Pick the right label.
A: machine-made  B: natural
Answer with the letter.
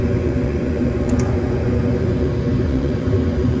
A